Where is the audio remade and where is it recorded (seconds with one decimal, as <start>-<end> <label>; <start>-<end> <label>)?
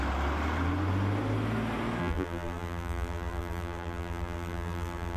0.0-2.0 recorded; 2.0-5.2 remade